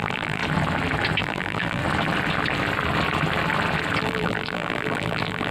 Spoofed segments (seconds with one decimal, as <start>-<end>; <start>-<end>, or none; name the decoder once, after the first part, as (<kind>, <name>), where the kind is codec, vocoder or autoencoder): 0.0-0.4 (vocoder, BigVGAN v2); 1.2-1.8; 4.0-5.5